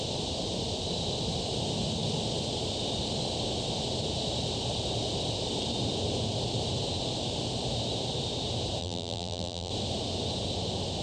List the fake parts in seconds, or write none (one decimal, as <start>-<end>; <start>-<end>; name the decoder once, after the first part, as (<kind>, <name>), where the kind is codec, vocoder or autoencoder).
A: 8.8-9.7 (vocoder, BigVGAN v2)